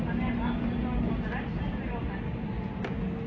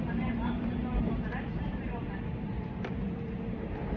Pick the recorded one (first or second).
first